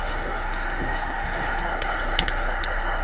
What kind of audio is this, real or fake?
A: fake